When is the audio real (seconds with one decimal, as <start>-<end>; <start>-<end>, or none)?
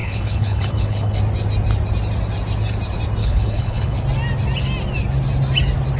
1.2-3.2; 4.0-6.0